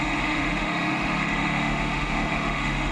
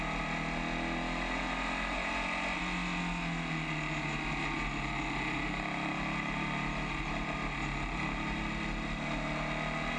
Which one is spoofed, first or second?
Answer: first